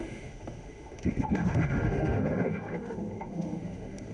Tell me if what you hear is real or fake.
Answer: fake